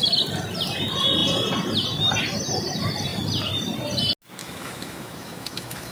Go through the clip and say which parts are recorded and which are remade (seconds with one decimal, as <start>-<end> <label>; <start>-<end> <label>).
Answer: 0.0-4.4 recorded; 4.4-5.9 remade